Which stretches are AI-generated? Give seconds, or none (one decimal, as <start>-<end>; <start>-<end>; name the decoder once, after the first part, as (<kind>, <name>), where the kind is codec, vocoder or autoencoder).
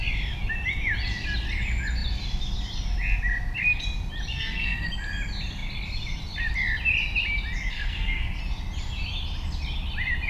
4.3-4.9 (codec, SNAC); 7.7-8.4